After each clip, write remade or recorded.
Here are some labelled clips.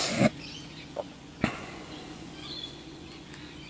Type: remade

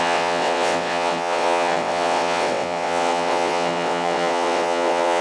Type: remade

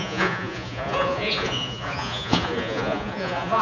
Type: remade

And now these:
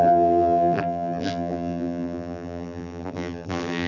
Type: remade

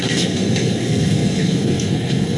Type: remade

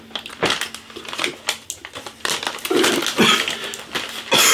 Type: recorded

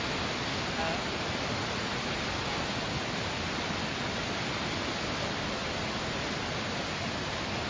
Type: recorded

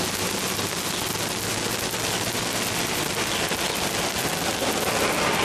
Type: recorded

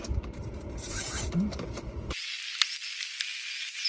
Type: recorded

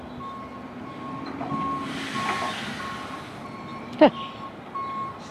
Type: recorded